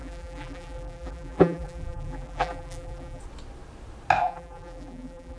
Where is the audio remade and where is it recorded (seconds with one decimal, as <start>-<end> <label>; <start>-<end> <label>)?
0.0-3.2 remade; 3.2-4.2 recorded; 4.2-5.4 remade

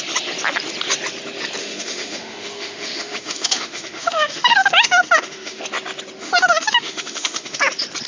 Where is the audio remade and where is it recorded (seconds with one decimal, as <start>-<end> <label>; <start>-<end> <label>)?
0.0-1.6 recorded; 1.6-5.6 remade; 5.6-6.2 recorded; 6.2-7.6 remade; 7.6-8.1 recorded

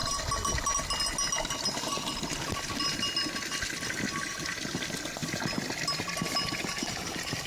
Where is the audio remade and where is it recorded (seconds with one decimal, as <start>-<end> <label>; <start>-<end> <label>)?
0.0-7.5 recorded

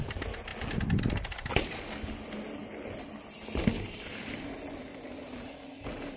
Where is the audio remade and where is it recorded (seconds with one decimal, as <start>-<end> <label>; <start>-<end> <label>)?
0.0-6.2 recorded

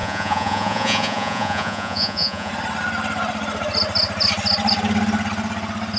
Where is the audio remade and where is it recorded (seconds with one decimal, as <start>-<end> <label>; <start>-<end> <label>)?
0.0-2.5 remade; 2.5-6.0 recorded